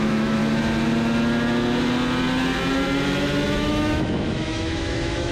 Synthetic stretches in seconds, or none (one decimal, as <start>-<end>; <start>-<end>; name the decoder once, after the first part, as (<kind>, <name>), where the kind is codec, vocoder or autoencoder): 0.0-0.4 (autoencoder, DAC-VAE); 3.6-5.3